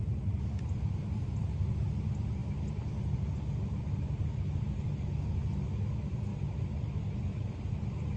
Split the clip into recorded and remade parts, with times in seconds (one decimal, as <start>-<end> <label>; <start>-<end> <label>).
0.0-8.2 recorded